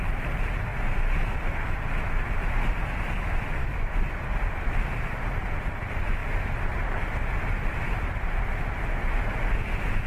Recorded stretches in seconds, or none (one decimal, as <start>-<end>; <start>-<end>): 0.0-3.6; 4.1-10.1